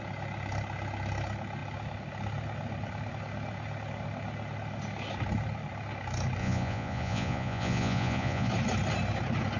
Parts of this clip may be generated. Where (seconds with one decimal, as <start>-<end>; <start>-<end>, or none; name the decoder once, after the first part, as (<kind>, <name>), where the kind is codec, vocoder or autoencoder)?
6.4-8.5 (vocoder, Vocos)